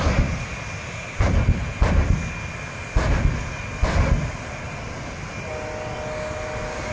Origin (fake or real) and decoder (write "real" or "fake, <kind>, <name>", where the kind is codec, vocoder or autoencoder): real